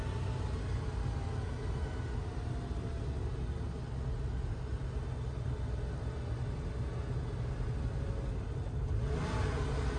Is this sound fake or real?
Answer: real